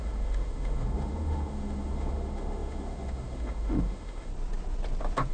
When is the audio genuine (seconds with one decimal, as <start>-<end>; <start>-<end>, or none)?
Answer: 4.3-5.3